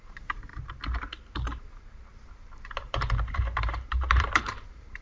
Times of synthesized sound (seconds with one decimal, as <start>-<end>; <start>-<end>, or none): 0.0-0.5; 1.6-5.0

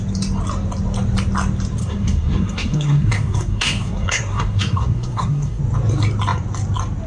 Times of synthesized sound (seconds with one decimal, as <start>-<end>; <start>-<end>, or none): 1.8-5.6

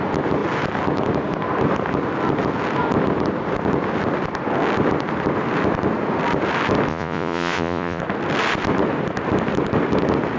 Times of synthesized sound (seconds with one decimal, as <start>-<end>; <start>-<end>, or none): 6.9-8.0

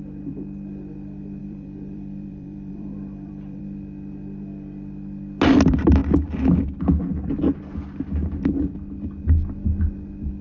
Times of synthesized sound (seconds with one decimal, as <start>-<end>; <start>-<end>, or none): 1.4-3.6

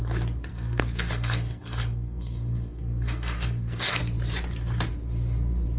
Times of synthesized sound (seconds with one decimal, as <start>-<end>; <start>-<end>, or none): 0.5-4.0